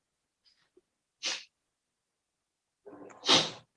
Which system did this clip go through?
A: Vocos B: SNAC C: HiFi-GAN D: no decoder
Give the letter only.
D